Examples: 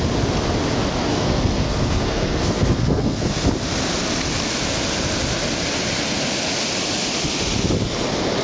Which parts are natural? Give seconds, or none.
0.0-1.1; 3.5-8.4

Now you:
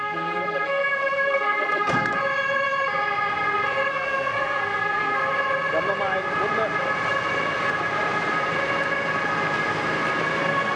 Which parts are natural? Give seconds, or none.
2.1-3.9; 5.2-10.4

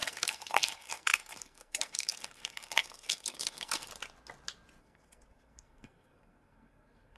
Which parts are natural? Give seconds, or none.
3.9-4.8

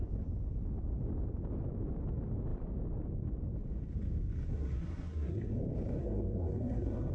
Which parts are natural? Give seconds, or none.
0.0-4.5; 5.6-6.0

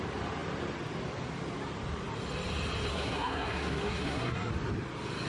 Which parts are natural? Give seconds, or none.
0.0-2.9; 4.5-5.3